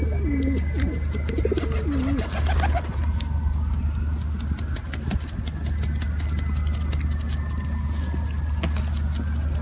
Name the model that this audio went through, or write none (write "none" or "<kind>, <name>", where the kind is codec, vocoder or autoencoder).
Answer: none